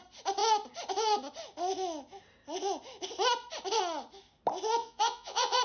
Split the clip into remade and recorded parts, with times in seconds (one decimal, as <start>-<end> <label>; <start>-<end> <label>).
0.0-4.8 recorded; 4.8-5.6 remade